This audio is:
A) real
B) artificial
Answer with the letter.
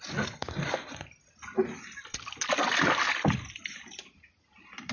A